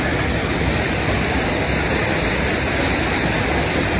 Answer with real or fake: real